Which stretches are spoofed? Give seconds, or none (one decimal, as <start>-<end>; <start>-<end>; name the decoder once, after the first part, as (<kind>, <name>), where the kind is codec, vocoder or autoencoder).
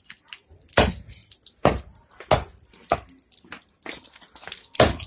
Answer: none